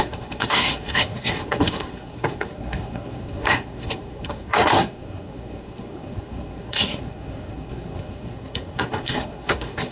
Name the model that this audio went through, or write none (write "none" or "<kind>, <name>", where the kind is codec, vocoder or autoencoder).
codec, SNAC